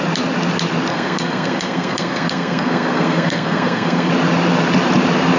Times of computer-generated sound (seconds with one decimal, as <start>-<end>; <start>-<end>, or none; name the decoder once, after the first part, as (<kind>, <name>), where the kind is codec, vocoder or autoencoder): 0.9-4.1 (codec, SNAC)